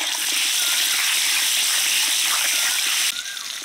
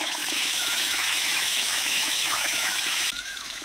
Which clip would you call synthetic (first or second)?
second